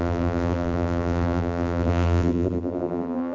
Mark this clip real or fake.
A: fake